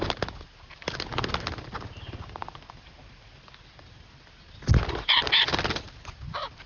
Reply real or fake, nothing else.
real